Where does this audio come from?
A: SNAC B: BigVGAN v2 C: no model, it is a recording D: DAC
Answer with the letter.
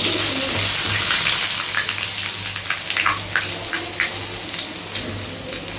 C